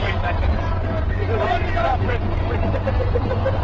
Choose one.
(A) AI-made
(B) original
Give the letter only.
A